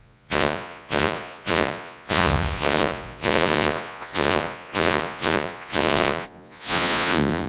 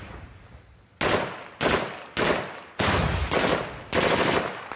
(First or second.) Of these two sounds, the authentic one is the second